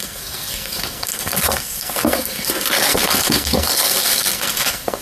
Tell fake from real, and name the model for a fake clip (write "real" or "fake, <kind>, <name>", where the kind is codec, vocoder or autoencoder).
fake, codec, SNAC